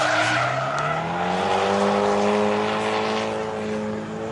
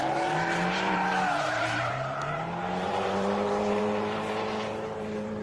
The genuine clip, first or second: first